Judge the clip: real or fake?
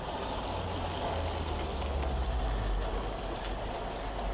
real